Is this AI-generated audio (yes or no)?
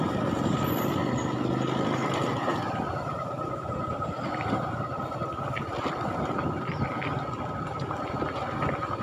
no